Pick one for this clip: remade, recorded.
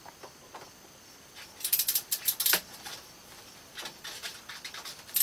recorded